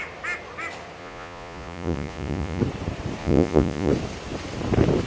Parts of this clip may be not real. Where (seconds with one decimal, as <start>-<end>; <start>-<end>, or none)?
1.0-2.6; 3.2-3.9